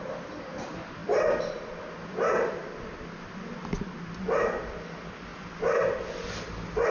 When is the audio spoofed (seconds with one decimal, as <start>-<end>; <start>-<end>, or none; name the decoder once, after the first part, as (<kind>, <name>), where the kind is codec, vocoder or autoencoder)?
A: none

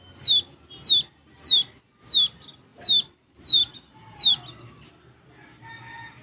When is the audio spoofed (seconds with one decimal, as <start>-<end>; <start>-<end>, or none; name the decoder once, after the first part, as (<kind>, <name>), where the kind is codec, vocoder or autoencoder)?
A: 2.7-4.3 (vocoder, BigVGAN v2)

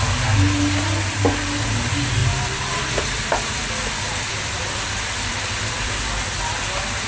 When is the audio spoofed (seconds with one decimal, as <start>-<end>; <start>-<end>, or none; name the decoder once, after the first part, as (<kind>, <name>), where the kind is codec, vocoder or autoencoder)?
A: 2.2-5.9 (vocoder, BigVGAN v2)

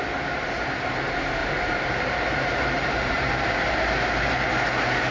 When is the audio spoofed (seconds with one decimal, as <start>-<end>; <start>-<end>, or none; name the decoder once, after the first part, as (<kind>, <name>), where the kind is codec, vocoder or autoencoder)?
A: 1.4-4.5 (vocoder, BigVGAN v2)